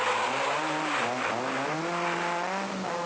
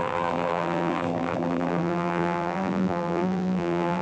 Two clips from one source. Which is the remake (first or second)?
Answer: second